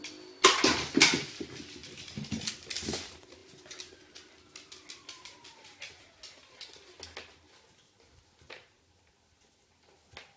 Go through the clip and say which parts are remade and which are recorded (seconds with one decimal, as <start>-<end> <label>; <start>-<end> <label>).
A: 0.0-10.4 recorded